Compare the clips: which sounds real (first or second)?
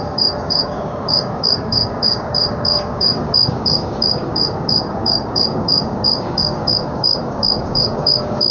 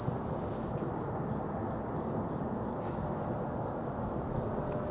second